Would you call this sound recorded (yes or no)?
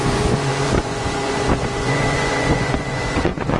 no